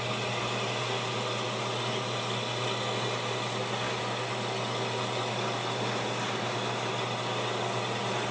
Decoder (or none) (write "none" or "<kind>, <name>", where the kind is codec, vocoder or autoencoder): none